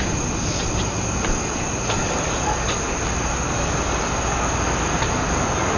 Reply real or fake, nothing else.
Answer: real